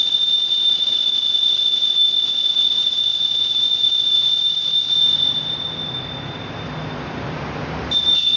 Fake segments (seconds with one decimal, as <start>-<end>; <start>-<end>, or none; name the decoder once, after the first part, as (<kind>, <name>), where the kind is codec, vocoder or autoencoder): none